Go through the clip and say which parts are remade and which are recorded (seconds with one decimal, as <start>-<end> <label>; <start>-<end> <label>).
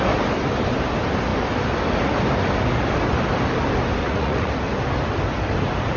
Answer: 0.0-4.0 recorded; 4.0-4.5 remade; 4.5-6.0 recorded